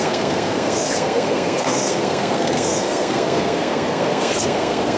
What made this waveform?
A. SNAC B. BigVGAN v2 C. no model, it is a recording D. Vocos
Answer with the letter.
A